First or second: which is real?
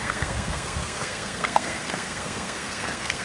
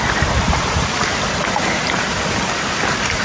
second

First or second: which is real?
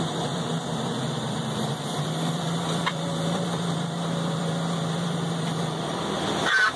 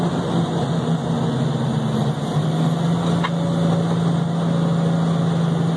second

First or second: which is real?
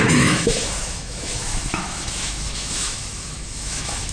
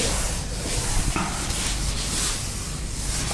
second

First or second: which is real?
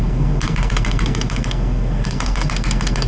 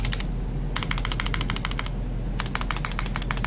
second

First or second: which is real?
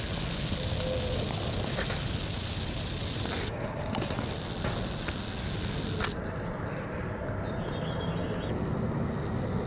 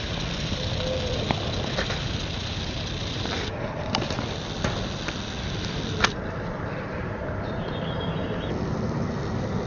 first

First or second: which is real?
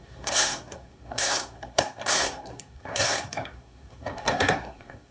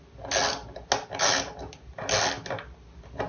second